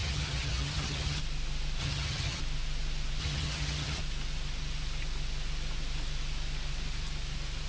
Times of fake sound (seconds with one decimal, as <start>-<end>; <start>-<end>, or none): 0.0-1.2; 1.8-2.4; 3.2-4.0